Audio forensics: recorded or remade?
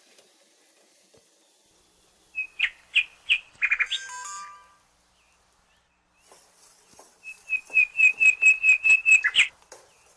recorded